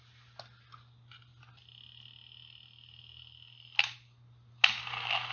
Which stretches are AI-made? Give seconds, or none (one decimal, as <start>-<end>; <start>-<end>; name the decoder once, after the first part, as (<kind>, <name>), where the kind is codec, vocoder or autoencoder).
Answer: none